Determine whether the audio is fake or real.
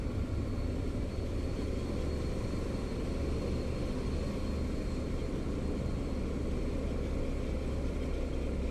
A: real